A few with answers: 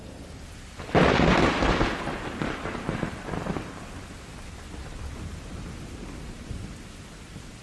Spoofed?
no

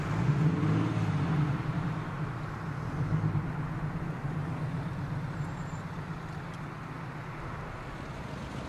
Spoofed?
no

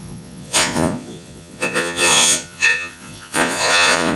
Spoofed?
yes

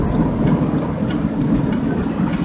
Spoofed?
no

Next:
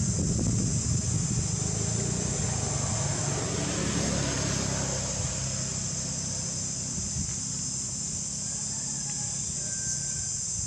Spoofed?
no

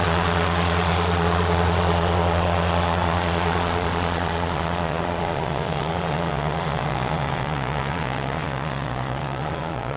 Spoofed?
yes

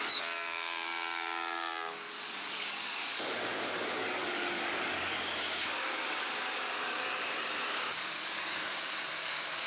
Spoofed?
yes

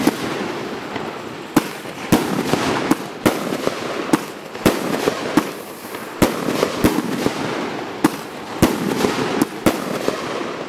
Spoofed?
no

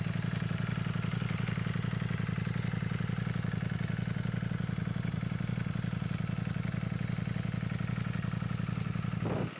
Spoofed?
no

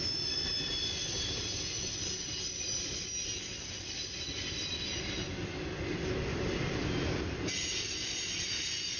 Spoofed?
no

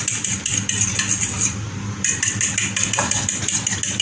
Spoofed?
no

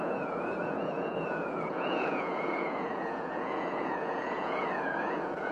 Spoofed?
yes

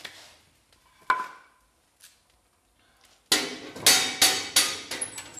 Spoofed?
no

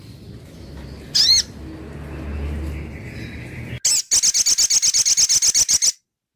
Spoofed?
no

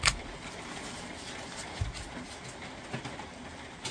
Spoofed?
no